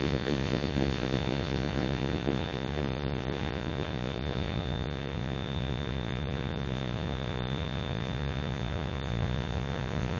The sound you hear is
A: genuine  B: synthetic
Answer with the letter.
B